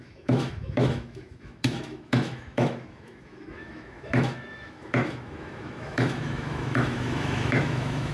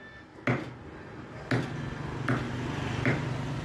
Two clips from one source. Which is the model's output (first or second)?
first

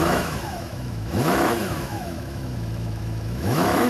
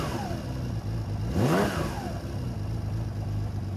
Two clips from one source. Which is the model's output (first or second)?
first